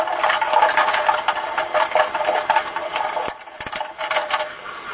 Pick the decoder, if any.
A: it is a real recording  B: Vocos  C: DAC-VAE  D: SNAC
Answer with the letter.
A